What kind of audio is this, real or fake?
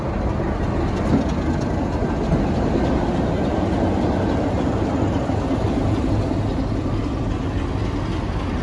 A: real